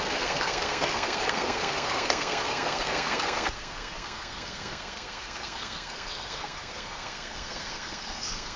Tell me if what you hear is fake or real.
fake